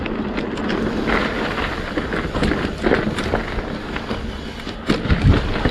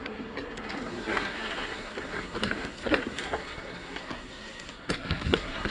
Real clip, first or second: first